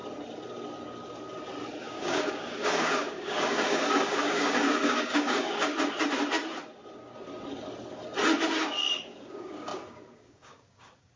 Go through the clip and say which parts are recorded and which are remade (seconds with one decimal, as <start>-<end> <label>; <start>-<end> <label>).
0.0-1.8 recorded; 1.8-5.7 remade; 5.7-8.8 recorded; 8.8-11.2 remade

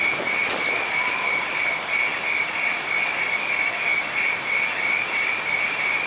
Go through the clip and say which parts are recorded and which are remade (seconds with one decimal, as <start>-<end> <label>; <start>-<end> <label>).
0.0-6.1 recorded

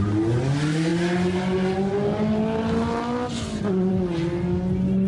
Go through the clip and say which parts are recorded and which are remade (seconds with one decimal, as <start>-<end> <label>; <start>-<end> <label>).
0.0-5.1 recorded

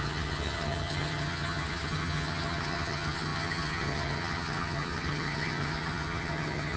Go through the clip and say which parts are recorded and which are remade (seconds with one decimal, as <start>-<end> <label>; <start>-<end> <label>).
0.0-6.8 remade

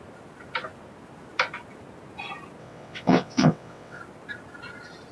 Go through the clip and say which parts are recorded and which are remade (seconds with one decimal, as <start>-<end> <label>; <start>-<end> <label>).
0.0-2.6 recorded; 2.6-4.0 remade; 4.0-5.1 recorded